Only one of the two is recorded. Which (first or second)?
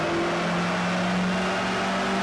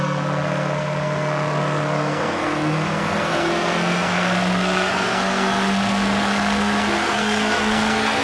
first